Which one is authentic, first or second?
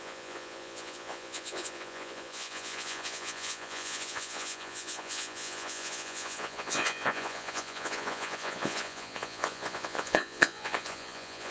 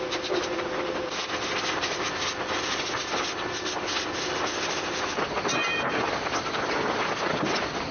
second